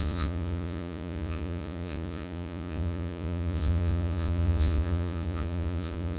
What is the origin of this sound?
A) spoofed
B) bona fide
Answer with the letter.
A